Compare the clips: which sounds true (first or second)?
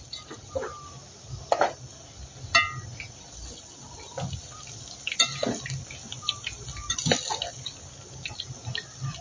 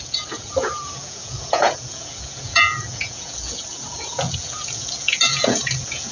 first